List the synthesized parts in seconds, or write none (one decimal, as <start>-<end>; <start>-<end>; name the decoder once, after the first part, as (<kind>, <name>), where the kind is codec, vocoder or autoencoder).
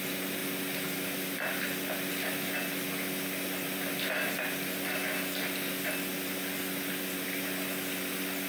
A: none